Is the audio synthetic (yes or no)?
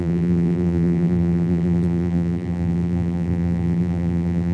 yes